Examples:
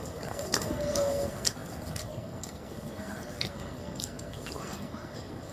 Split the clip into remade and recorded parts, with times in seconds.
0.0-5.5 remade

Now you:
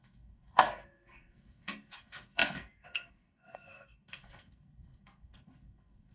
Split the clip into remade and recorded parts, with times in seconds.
0.0-6.1 remade

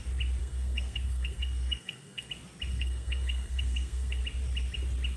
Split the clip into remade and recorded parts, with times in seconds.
0.0-0.4 recorded; 0.4-2.3 remade; 2.3-2.7 recorded; 2.7-4.2 remade; 4.2-5.2 recorded

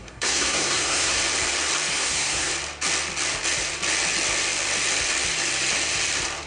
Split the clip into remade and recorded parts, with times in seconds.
0.0-1.2 remade; 1.2-1.9 recorded; 1.9-2.5 remade; 2.5-6.5 recorded